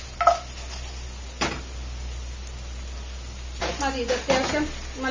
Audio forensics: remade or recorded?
recorded